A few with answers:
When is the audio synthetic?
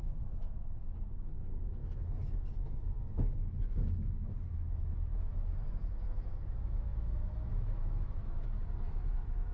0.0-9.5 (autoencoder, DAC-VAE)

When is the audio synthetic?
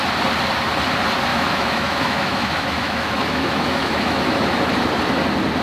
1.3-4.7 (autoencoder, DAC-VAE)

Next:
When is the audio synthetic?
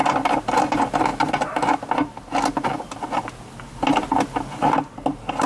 none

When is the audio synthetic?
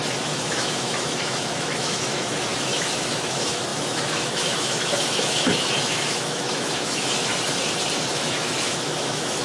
0.0-7.3 (autoencoder, DAC-VAE); 8.1-9.4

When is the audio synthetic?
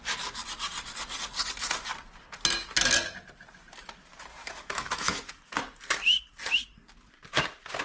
4.4-5.3 (autoencoder, DAC-VAE)